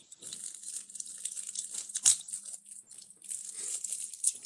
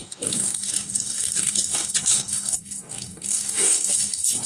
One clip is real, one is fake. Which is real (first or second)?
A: first